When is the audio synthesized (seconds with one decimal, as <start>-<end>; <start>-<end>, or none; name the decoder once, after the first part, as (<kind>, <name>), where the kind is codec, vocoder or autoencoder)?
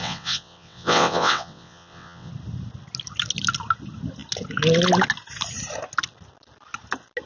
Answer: 0.0-2.3 (vocoder, WaveNeXt)